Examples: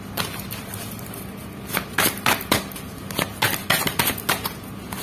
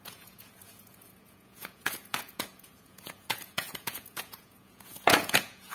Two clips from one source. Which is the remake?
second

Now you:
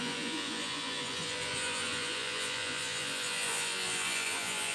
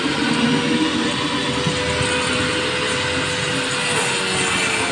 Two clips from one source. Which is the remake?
first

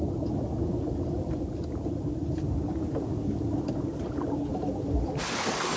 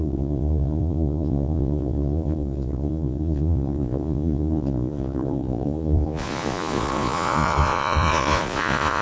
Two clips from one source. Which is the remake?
second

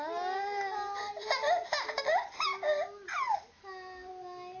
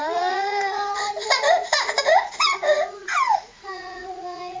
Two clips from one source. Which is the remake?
second